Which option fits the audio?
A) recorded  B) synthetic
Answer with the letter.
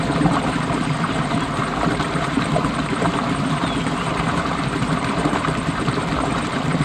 B